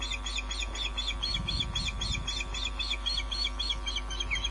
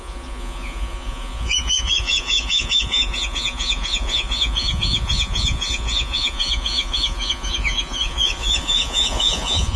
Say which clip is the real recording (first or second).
first